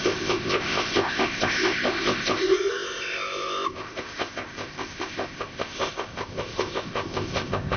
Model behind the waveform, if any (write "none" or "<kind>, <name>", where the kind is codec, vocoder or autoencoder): codec, ZipCodec